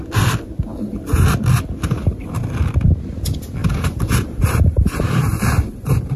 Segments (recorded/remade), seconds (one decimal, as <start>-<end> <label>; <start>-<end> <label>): 0.0-3.6 recorded; 3.6-6.2 remade